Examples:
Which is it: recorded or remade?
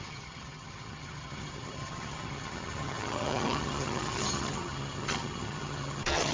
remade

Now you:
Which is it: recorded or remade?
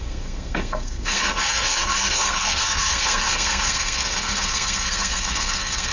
remade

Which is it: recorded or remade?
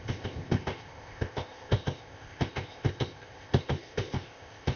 remade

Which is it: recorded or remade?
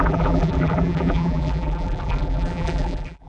remade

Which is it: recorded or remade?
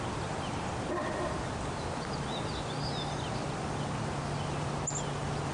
recorded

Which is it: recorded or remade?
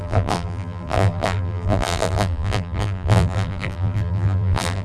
remade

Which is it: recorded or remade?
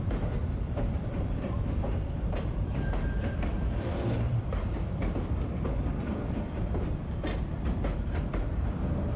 remade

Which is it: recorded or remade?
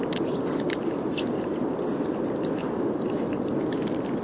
recorded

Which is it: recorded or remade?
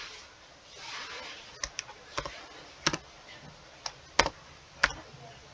recorded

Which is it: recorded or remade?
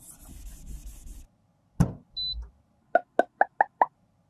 recorded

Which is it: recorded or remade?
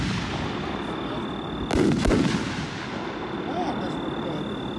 recorded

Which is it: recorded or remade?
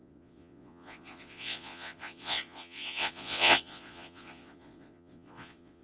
remade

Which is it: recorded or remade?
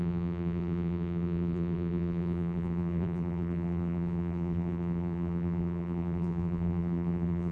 remade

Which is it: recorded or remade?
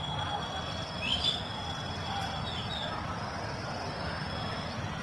recorded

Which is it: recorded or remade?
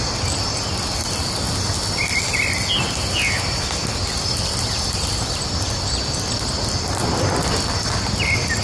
recorded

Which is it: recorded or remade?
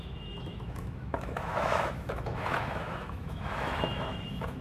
remade